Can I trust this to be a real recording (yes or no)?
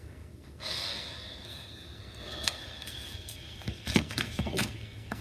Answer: no